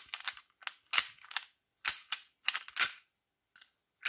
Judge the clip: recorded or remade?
recorded